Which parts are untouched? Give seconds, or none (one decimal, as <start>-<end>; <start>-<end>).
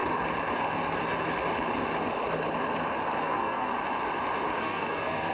0.0-3.2; 3.7-4.6